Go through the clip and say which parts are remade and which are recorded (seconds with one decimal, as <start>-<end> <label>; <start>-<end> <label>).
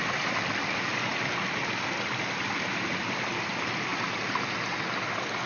0.0-5.5 recorded